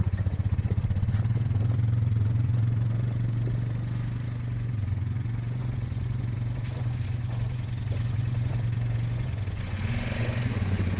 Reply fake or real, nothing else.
fake